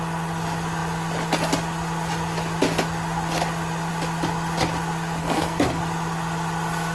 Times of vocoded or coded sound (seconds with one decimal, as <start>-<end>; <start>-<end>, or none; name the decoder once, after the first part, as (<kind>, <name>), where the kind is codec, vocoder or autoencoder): 5.2-5.8 (codec, SNAC)